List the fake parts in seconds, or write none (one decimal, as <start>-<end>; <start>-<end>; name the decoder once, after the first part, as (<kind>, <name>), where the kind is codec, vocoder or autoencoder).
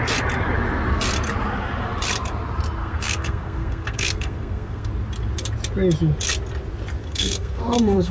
2.8-4.9 (codec, SNAC); 7.0-8.1